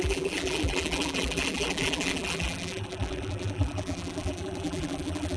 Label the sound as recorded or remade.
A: remade